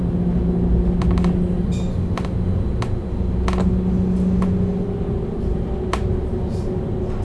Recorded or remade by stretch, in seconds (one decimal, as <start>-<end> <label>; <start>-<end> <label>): 0.0-7.2 recorded